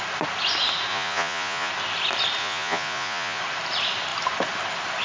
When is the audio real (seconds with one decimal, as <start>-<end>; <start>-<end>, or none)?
0.0-0.9; 1.7-2.4; 3.4-5.0